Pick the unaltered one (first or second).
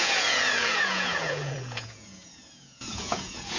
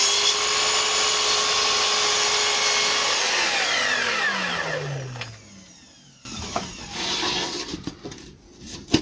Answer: second